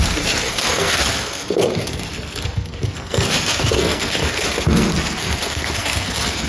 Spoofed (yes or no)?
yes